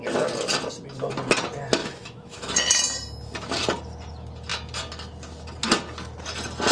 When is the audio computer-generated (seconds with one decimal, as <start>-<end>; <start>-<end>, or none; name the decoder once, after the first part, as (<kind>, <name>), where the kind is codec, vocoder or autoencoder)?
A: 1.8-2.5 (autoencoder, DAC-VAE)